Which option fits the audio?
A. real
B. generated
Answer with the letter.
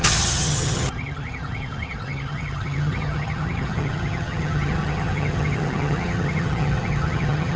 B